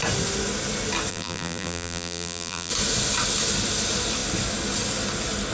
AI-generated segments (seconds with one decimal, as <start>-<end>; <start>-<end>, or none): 1.1-2.7